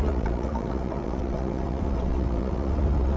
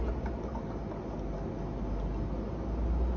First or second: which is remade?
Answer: first